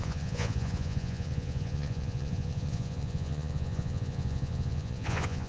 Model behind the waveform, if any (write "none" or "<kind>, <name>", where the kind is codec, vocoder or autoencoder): vocoder, Vocos